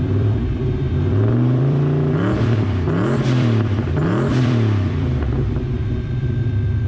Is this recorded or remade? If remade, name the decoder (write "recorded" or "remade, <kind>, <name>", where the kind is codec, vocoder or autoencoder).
remade, vocoder, BigVGAN v2